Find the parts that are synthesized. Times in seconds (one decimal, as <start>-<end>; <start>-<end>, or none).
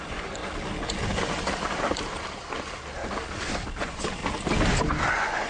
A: 0.0-0.4; 3.7-4.2; 5.1-5.5